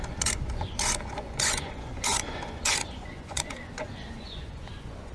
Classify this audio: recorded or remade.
remade